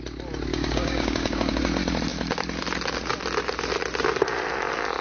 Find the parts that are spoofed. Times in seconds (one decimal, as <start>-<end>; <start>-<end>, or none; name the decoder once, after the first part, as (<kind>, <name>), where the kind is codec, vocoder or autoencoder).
0.5-1.6 (codec, DAC)